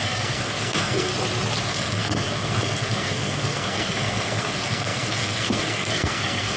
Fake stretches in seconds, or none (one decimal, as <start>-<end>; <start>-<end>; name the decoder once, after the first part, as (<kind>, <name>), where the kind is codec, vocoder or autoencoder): 0.0-1.1 (codec, SNAC); 1.6-6.6